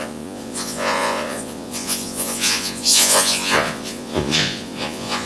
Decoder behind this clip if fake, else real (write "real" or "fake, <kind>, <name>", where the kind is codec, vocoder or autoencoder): fake, vocoder, Vocos